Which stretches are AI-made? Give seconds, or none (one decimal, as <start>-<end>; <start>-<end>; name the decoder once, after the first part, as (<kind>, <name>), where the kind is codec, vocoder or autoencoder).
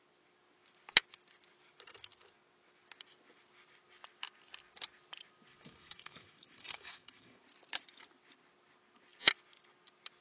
5.5-7.4 (autoencoder, DAC-VAE)